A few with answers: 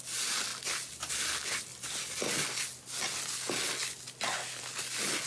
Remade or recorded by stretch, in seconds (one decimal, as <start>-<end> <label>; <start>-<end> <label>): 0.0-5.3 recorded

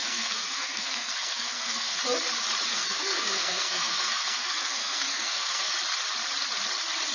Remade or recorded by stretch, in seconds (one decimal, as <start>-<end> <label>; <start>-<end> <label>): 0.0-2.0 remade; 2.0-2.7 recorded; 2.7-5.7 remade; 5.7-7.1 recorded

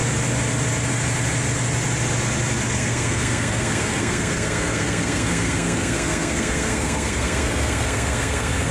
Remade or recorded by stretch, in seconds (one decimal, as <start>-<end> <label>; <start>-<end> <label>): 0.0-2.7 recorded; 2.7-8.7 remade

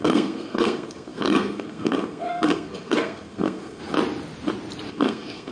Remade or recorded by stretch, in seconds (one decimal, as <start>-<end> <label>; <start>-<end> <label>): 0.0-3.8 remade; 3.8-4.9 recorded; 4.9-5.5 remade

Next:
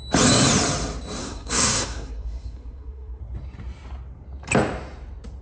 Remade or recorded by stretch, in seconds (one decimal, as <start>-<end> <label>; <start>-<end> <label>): 0.0-1.2 recorded; 1.2-3.2 remade; 3.2-5.4 recorded